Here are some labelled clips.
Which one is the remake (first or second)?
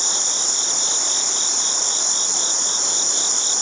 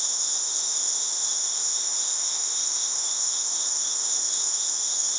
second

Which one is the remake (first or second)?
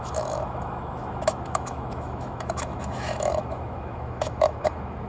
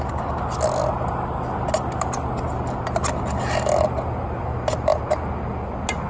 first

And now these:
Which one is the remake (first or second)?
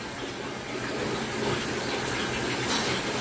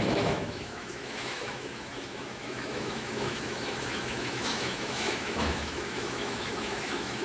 second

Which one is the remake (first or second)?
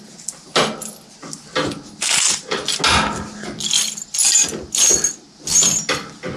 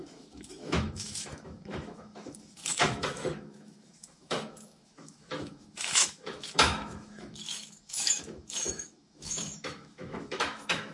second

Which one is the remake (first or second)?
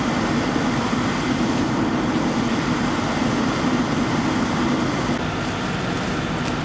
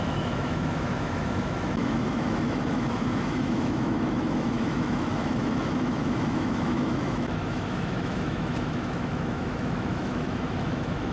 second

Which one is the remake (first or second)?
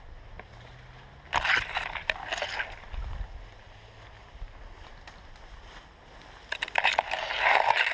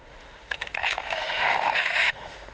second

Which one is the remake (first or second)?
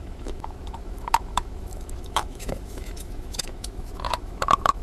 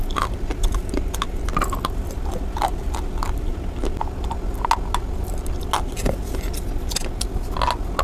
first